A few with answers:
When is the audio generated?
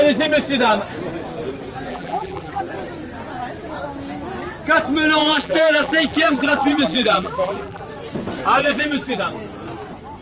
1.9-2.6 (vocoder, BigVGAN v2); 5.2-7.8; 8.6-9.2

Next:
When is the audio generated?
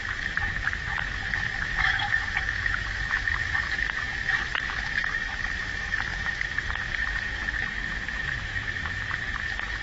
0.0-9.8 (autoencoder, DAC-VAE)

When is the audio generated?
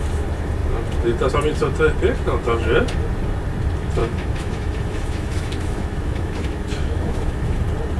4.0-7.6 (autoencoder, DAC-VAE)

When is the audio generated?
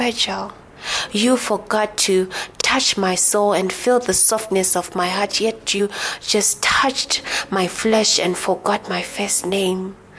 7.8-9.5 (vocoder, Vocos)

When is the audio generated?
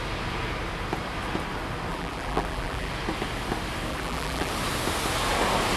1.9-2.9 (vocoder, BigVGAN v2); 3.9-4.5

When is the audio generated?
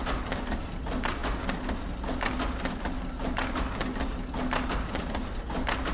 none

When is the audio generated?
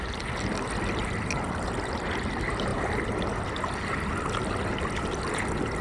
none